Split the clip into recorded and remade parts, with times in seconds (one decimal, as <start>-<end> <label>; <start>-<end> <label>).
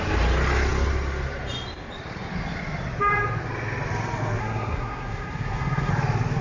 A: 0.0-4.4 recorded; 4.4-5.9 remade; 5.9-6.4 recorded